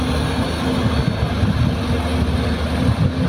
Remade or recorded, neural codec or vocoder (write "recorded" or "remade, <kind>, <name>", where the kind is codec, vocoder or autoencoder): recorded